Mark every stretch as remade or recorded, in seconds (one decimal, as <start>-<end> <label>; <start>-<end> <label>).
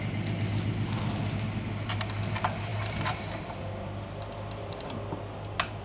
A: 0.0-5.8 recorded